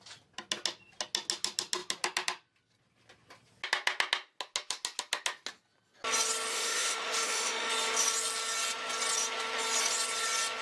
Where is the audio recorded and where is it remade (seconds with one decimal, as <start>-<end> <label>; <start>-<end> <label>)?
0.0-6.5 recorded; 6.5-7.7 remade; 7.7-10.6 recorded